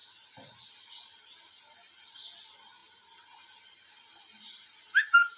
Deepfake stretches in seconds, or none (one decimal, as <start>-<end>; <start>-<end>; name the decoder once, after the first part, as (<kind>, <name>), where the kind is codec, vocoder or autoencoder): none